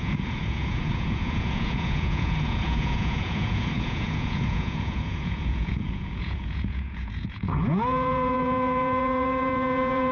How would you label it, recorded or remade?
remade